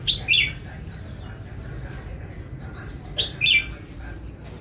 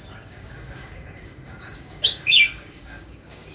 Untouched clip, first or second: first